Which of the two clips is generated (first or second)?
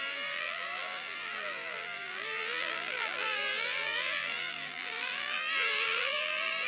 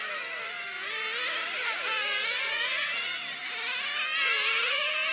first